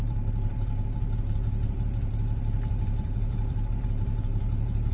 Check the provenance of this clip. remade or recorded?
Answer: remade